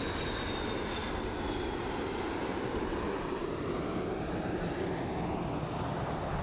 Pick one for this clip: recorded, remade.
recorded